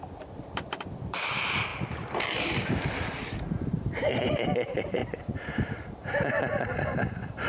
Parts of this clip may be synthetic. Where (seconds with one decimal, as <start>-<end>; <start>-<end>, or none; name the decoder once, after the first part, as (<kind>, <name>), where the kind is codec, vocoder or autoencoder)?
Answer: 0.0-5.0 (vocoder, BigVGAN v2); 5.7-7.5